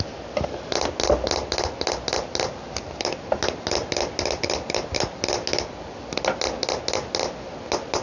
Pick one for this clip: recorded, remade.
recorded